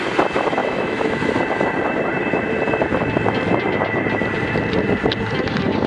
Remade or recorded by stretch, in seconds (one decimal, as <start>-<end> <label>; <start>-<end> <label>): 0.0-0.6 recorded; 0.6-1.3 remade; 1.3-5.9 recorded